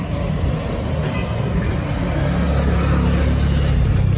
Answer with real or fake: real